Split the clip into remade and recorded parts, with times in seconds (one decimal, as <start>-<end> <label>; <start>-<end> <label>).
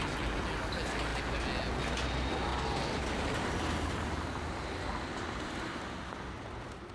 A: 0.0-6.9 recorded